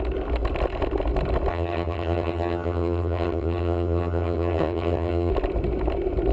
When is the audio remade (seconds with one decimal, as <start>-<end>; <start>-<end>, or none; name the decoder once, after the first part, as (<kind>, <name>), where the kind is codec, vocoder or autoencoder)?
1.5-5.3 (vocoder, HiFi-GAN)